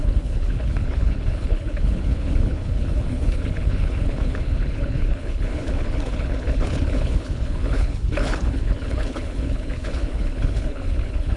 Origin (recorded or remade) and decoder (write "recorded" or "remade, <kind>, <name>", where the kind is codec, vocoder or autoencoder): remade, codec, HILCodec